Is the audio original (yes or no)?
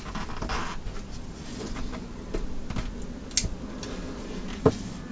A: yes